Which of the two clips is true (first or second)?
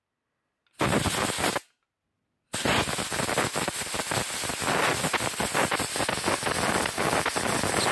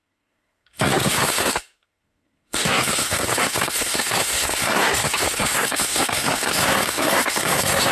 first